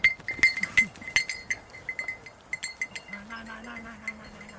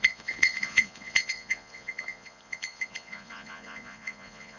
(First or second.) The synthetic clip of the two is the second